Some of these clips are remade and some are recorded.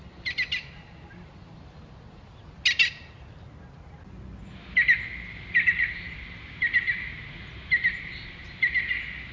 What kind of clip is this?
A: recorded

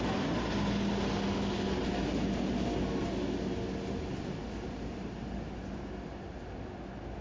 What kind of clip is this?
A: recorded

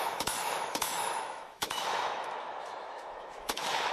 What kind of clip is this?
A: remade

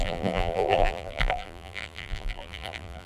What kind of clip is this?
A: remade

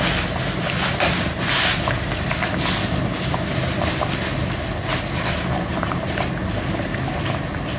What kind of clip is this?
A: recorded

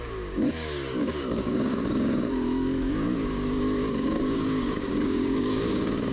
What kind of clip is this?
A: remade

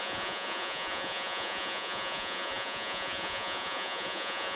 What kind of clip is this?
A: remade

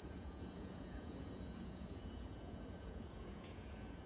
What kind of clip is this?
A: remade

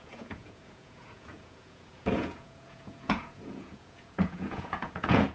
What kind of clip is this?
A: remade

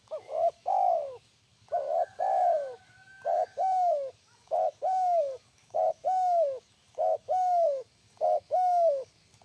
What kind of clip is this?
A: remade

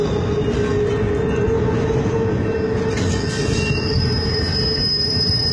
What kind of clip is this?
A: recorded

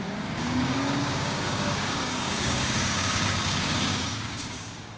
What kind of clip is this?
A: remade